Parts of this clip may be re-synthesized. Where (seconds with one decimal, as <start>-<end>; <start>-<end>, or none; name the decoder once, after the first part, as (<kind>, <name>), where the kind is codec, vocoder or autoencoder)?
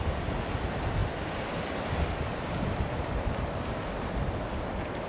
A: none